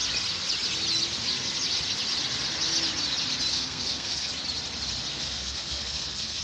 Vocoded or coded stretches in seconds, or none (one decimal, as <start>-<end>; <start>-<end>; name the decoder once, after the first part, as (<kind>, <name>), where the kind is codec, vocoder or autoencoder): 3.5-4.3 (codec, SNAC); 5.1-6.4